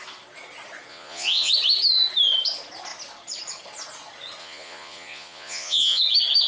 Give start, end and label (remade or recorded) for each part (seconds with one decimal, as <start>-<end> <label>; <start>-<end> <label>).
0.0-0.9 recorded; 0.9-1.5 remade; 1.5-4.4 recorded; 4.4-6.0 remade; 6.0-6.5 recorded

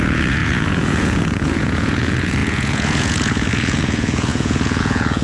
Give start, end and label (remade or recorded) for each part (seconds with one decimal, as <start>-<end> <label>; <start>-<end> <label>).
0.0-5.2 remade

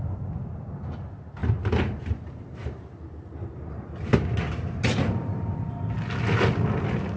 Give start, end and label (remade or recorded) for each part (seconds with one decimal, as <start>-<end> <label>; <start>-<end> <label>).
0.0-1.4 recorded; 1.4-4.0 remade; 4.0-7.2 recorded

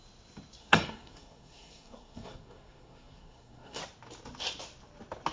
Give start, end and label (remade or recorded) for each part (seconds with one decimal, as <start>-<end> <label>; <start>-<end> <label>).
0.0-0.6 recorded; 0.6-3.8 remade; 3.8-5.3 recorded

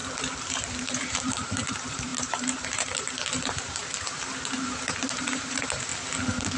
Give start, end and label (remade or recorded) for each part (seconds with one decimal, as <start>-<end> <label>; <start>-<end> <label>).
0.0-0.6 recorded; 0.6-5.9 remade; 5.9-6.6 recorded